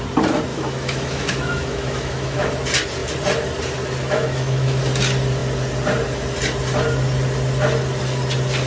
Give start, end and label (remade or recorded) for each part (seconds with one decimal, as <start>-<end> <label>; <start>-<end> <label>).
0.0-0.5 recorded; 0.5-2.5 remade; 2.5-4.0 recorded; 4.0-4.8 remade; 4.8-8.7 recorded